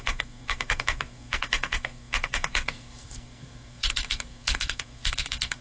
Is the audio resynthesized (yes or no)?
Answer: yes